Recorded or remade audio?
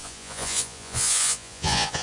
remade